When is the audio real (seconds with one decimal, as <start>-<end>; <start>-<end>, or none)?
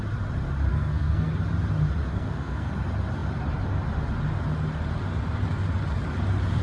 0.0-0.7; 1.3-2.1; 2.7-6.6